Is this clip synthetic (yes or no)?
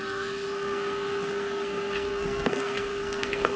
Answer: yes